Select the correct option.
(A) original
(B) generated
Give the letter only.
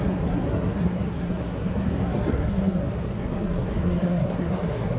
B